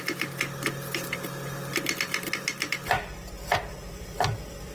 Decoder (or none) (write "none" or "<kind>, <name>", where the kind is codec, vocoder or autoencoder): none